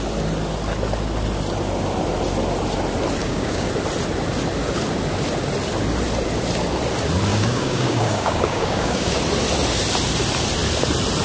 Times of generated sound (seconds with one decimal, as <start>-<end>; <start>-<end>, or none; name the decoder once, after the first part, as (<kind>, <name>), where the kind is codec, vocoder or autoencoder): 3.2-3.7 (codec, DAC); 7.3-9.2